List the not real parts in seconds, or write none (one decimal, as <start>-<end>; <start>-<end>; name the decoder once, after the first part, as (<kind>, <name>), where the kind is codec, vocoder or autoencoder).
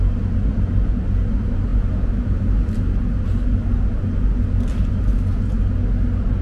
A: none